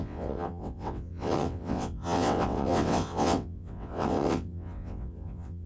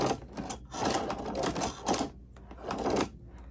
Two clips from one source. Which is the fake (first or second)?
first